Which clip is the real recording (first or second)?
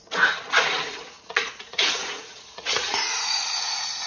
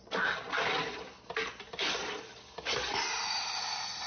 second